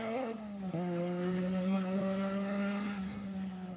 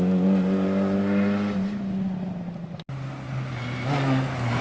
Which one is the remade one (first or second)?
first